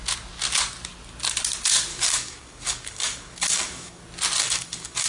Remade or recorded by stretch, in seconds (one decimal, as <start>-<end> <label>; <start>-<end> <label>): 0.0-1.9 recorded; 1.9-4.0 remade; 4.0-4.4 recorded; 4.4-5.1 remade